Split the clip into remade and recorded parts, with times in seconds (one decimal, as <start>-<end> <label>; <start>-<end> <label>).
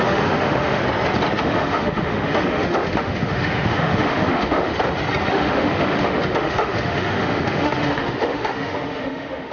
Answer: 0.0-0.8 remade; 0.8-1.4 recorded; 1.4-4.7 remade; 4.7-5.3 recorded; 5.3-9.5 remade